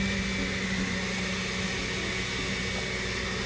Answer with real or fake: real